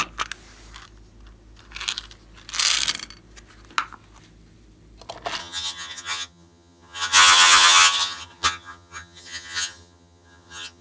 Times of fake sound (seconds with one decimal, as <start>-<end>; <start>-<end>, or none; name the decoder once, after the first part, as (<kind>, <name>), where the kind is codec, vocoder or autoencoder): 5.4-10.8 (vocoder, HiFi-GAN)